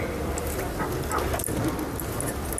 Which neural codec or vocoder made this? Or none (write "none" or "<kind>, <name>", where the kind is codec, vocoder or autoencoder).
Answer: none